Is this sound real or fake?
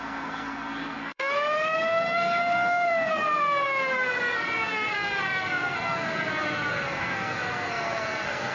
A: fake